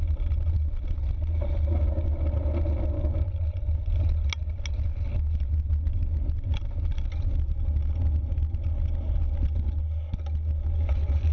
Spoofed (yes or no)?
no